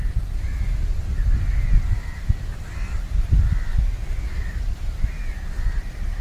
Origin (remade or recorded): recorded